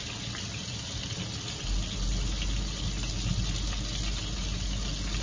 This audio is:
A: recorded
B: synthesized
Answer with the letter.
A